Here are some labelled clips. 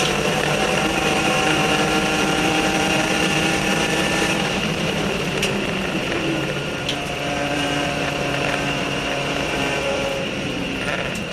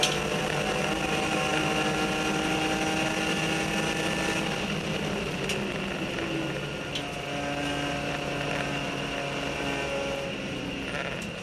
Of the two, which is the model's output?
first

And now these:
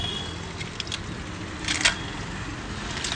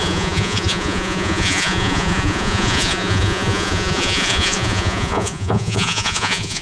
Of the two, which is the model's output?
second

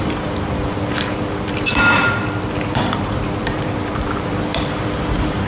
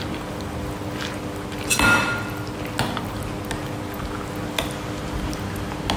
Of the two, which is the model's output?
first